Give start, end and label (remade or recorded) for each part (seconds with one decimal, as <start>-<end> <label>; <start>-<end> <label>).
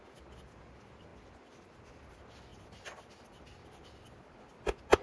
0.0-5.0 recorded